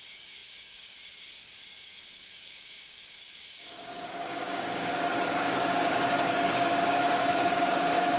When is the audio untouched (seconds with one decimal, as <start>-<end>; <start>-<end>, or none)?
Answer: none